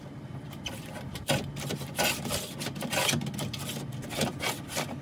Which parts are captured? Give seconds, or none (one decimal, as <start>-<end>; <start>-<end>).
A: 0.0-5.0